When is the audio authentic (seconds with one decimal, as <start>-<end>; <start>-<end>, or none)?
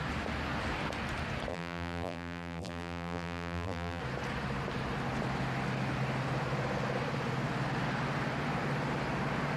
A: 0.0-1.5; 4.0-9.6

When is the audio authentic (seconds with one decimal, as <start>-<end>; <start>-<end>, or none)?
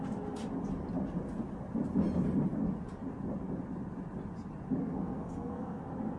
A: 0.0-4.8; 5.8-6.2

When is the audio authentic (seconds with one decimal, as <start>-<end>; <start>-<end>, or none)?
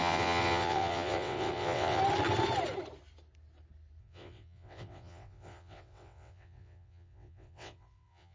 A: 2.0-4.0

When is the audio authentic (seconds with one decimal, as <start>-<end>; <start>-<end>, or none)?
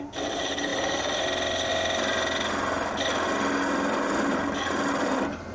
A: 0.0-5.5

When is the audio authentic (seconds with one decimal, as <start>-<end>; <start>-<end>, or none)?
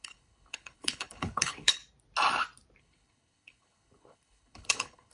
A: 1.8-2.8